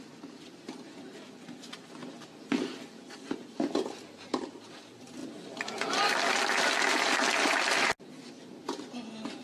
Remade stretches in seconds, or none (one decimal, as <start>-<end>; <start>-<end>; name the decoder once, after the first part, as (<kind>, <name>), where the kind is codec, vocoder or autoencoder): none